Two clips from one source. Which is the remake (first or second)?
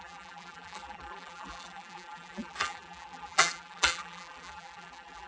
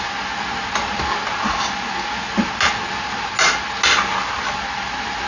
first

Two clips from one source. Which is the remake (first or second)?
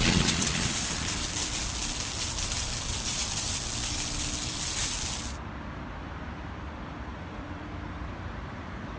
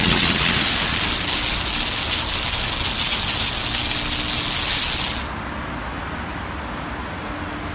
first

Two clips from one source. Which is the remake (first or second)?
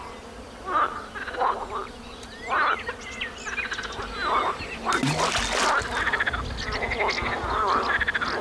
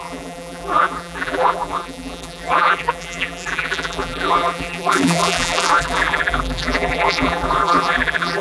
second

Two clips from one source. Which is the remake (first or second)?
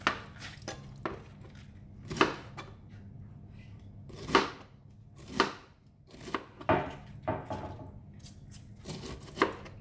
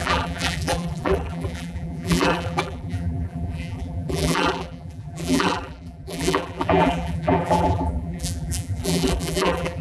second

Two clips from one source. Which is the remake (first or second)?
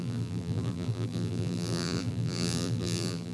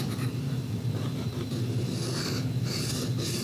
first